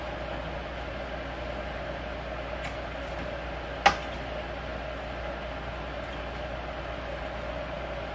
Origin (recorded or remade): recorded